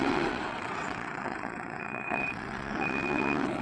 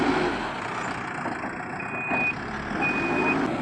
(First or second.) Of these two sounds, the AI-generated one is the first